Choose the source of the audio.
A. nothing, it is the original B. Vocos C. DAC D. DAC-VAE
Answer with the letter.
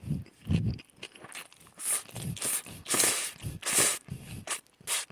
A